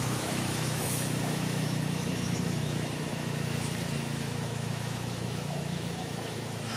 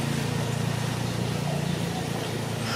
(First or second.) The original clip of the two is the second